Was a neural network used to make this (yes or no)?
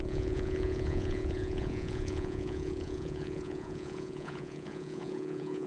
yes